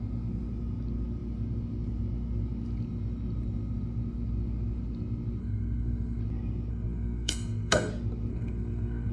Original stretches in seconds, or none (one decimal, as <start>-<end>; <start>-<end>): 0.0-5.4; 6.2-6.7; 7.9-8.3

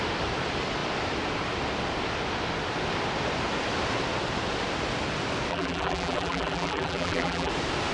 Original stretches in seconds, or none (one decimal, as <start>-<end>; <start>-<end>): 0.0-5.5; 7.5-7.9

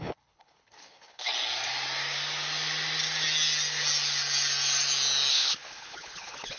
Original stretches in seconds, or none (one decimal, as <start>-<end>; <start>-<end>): 1.3-5.3

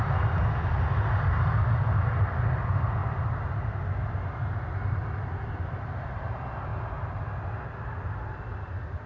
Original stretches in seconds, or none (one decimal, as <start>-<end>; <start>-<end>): 0.0-9.1

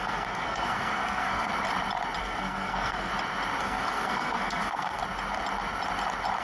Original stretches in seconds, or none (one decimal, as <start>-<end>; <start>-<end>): 1.5-2.2; 3.1-3.6; 5.0-6.4

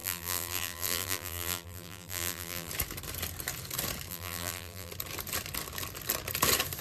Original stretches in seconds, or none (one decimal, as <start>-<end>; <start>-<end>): 2.7-4.1; 4.9-6.8

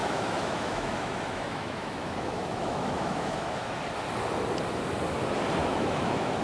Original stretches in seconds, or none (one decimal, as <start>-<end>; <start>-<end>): 3.8-5.6

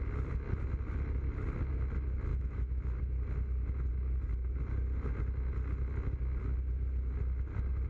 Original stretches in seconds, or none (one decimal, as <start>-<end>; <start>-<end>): 0.0-2.3; 3.0-7.9